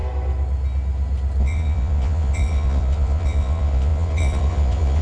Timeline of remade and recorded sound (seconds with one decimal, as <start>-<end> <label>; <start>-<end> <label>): 0.0-1.4 recorded; 1.4-5.0 remade